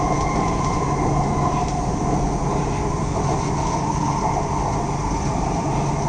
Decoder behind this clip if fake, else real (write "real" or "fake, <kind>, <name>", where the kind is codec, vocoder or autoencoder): real